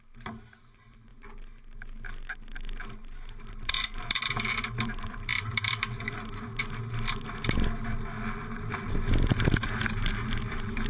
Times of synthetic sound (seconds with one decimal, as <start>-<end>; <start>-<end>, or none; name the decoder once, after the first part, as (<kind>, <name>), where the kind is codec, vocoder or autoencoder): 0.0-1.1 (vocoder, BigVGAN v2); 3.5-6.5; 8.7-10.9